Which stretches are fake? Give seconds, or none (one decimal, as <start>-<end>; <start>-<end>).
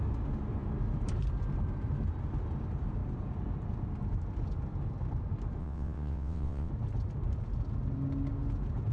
5.6-6.7